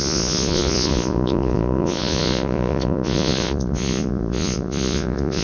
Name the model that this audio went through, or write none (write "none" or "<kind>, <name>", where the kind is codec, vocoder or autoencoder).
vocoder, Vocos